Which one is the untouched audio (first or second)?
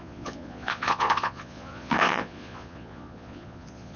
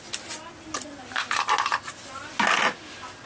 second